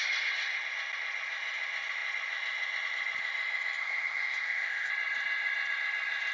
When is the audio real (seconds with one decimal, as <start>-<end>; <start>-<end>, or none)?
0.0-3.8; 4.9-6.3